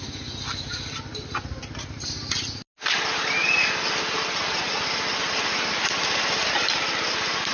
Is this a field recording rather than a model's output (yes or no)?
yes